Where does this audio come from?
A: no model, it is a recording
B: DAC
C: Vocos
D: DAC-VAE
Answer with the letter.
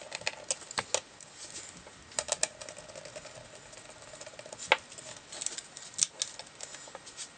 A